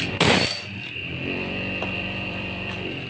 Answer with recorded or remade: remade